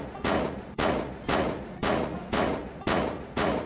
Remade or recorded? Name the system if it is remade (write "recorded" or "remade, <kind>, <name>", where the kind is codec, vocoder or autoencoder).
remade, vocoder, Vocos